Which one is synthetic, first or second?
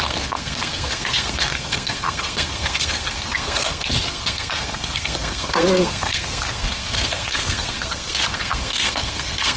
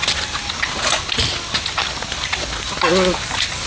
first